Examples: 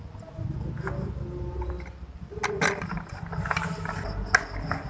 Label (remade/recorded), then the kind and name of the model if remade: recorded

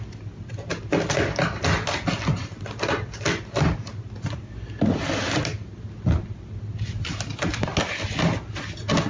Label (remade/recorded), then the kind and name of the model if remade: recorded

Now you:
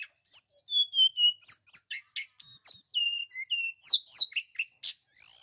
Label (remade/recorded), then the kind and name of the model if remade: recorded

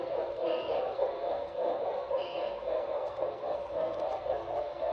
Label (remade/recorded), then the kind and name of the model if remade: remade, codec, SNAC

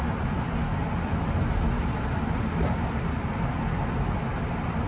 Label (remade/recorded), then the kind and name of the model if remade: recorded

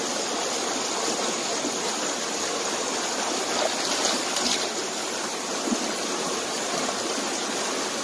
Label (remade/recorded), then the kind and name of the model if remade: recorded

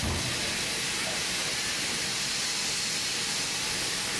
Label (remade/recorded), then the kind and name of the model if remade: recorded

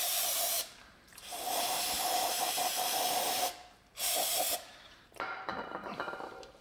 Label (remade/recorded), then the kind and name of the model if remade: remade, vocoder, BigVGAN v2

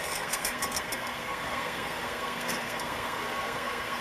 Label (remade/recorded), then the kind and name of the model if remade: remade, codec, SNAC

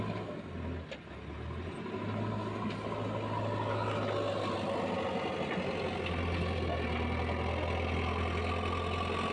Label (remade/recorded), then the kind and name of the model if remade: recorded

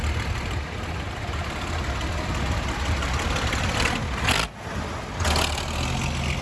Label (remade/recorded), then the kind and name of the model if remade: recorded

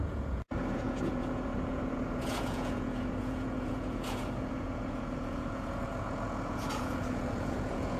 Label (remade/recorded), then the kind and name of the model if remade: remade, vocoder, Vocos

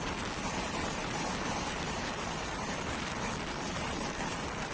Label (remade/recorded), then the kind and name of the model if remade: recorded